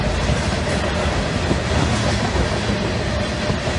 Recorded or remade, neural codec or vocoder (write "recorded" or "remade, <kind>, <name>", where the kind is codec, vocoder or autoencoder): recorded